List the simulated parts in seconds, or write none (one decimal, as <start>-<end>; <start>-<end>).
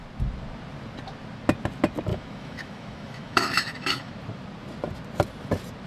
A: 2.1-4.1